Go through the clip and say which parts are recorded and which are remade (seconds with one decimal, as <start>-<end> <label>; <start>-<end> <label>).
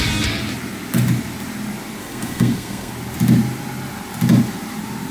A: 0.0-2.0 recorded; 2.0-2.9 remade; 2.9-5.1 recorded